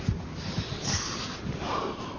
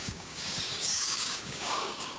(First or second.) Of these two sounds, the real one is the first